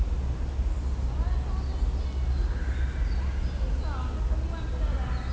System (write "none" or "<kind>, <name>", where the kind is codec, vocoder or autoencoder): none